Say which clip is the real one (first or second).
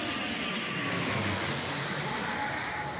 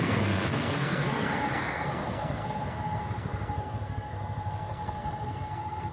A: first